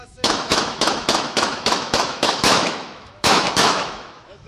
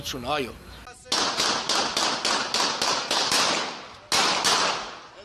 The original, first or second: second